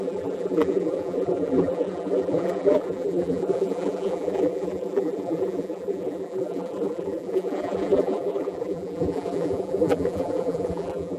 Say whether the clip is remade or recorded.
remade